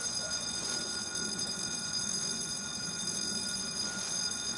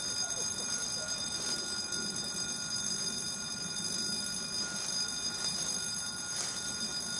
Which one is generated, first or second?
first